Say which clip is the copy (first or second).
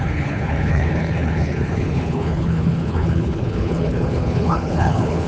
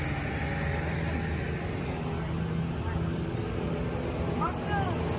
first